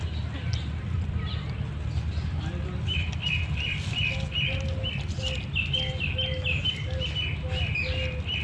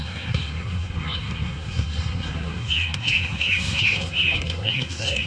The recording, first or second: first